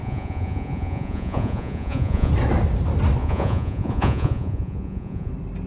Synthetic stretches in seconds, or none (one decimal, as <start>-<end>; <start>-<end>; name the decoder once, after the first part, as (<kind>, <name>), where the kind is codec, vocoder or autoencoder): 0.0-2.3 (vocoder, Vocos); 3.2-5.3